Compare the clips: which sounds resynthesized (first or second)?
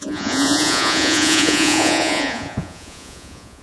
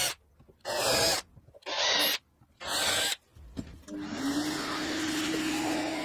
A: first